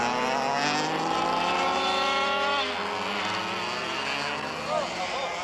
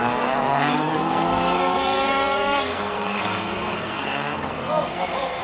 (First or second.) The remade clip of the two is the second